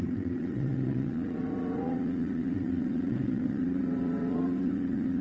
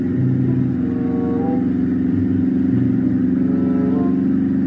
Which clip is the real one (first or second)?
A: second